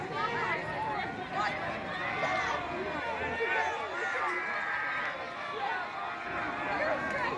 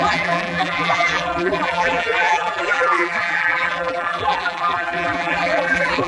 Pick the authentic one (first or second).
first